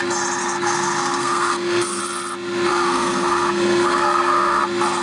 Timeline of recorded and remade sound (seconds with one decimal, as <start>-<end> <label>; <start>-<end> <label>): 0.0-0.4 recorded; 0.4-2.0 remade; 2.0-2.7 recorded; 2.7-4.6 remade; 4.6-5.0 recorded